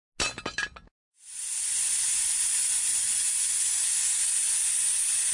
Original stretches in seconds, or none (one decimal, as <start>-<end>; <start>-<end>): 0.0-2.9; 3.8-5.3